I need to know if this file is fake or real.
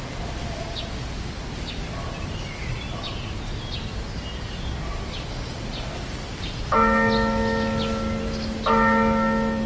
real